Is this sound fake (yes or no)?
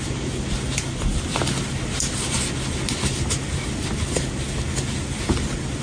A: no